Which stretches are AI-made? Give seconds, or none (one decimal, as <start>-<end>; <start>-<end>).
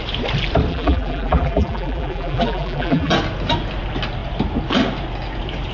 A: 0.7-3.1